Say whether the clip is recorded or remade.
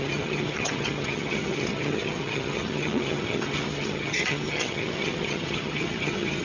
remade